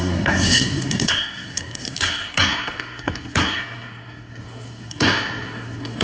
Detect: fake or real fake